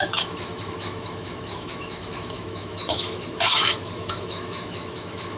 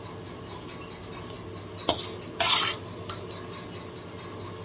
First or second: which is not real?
first